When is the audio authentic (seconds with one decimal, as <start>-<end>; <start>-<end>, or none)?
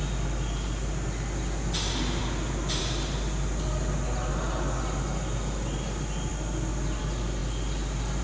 0.0-8.2